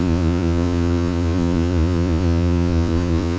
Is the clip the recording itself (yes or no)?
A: no